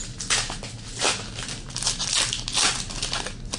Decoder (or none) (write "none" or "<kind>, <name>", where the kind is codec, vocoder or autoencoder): none